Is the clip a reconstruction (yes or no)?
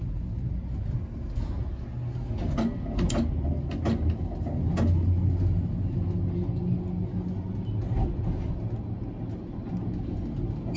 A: no